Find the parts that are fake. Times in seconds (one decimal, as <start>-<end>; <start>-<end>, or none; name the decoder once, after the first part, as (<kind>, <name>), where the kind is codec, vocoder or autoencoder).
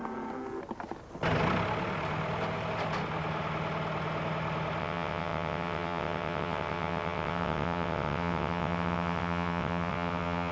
4.8-10.5 (vocoder, WaveNeXt)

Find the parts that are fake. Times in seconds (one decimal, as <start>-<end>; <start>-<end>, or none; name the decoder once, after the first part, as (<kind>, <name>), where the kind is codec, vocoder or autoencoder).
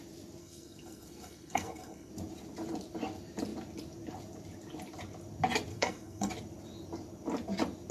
0.4-2.1 (codec, SNAC); 5.7-6.3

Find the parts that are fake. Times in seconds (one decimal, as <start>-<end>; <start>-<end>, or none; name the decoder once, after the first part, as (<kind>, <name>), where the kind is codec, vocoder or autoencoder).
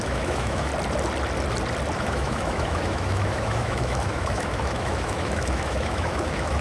0.0-0.7 (autoencoder, DAC-VAE); 2.0-6.6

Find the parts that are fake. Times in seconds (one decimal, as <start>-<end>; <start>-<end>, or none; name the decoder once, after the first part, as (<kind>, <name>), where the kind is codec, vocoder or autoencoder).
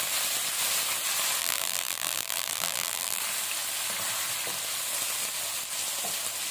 1.4-3.2 (vocoder, BigVGAN v2)